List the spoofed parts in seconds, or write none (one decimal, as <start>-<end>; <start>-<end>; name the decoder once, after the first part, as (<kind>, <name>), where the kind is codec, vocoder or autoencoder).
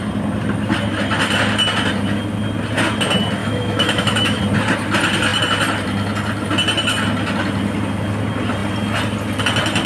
3.4-4.4 (autoencoder, DAC-VAE)